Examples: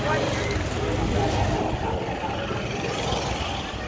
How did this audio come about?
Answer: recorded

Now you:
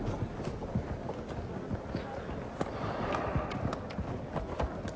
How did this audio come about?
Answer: recorded